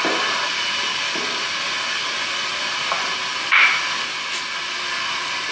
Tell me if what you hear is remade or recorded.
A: recorded